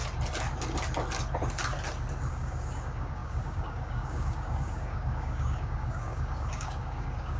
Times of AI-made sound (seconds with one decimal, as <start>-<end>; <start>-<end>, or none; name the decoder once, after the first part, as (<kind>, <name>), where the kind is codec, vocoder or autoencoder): 2.3-7.4 (codec, DAC)